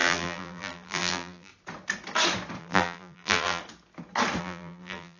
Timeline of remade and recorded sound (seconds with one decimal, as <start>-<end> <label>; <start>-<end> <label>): 0.0-1.5 remade; 1.5-2.6 recorded; 2.6-3.6 remade; 3.6-4.4 recorded; 4.4-5.2 remade